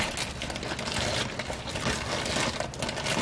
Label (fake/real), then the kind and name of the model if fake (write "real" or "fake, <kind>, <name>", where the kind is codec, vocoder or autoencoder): real